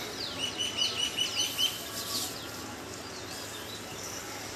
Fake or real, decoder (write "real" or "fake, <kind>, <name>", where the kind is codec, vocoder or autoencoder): real